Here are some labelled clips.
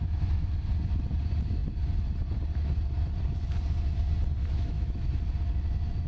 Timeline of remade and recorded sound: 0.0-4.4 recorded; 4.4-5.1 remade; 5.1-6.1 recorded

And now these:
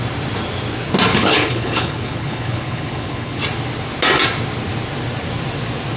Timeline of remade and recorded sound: 0.0-1.1 recorded; 1.1-3.4 remade; 3.4-6.0 recorded

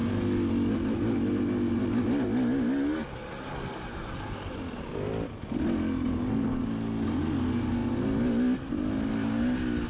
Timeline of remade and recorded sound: 0.0-9.9 recorded

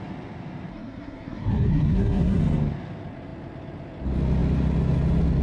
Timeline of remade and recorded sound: 0.0-0.7 recorded; 0.7-2.4 remade; 2.4-5.4 recorded

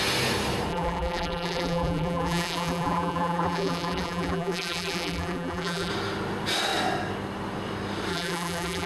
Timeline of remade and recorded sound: 0.0-0.7 recorded; 0.7-5.9 remade; 5.9-8.1 recorded; 8.1-8.9 remade

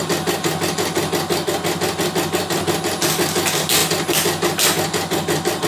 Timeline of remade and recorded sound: 0.0-5.7 recorded

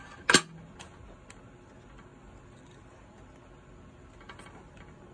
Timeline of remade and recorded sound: 0.0-5.1 recorded